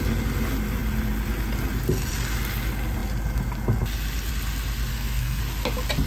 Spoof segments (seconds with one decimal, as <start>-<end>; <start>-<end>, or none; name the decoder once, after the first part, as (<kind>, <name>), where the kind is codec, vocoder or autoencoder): 4.9-5.4 (codec, SNAC)